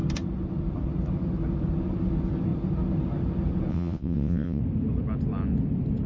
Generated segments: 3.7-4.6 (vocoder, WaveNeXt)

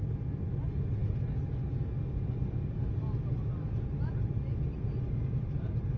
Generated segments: none

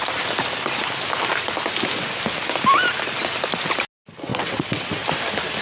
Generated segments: 4.3-4.9 (vocoder, WaveNeXt)

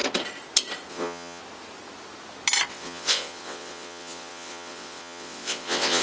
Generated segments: 0.9-1.4 (vocoder, WaveNeXt); 2.7-6.0

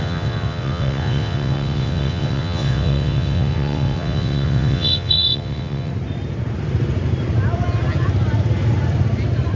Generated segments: 0.0-5.9 (vocoder, WaveNeXt)

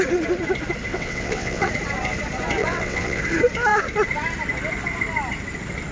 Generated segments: 0.9-1.7 (vocoder, WaveNeXt); 2.6-3.2

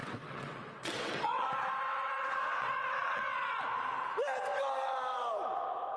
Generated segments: 0.0-3.6 (vocoder, WaveNeXt)